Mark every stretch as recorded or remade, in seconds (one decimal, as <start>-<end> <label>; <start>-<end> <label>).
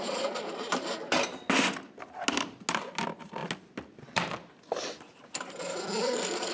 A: 0.0-6.5 recorded